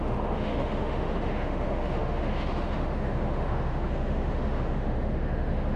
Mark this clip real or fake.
fake